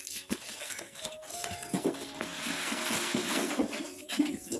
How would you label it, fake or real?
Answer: fake